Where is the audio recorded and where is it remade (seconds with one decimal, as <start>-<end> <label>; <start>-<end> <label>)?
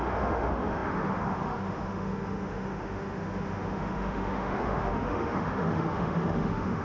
0.0-6.8 remade